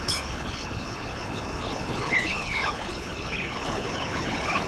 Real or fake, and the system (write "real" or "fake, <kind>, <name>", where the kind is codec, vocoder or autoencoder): fake, codec, HILCodec